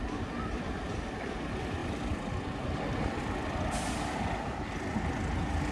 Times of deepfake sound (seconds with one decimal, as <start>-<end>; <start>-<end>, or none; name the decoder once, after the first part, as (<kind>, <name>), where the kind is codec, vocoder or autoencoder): none